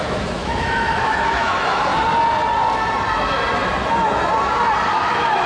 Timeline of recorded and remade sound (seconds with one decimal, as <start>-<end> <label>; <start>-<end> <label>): 0.0-1.9 remade; 1.9-4.9 recorded; 4.9-5.5 remade